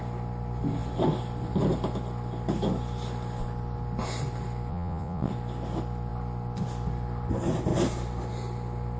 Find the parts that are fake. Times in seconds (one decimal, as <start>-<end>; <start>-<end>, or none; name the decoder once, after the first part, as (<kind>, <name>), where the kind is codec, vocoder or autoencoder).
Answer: 4.7-5.3 (vocoder, Vocos)